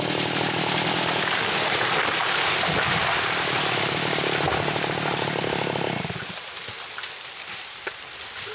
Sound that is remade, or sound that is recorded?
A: recorded